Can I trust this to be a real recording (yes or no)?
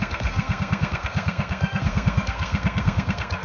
no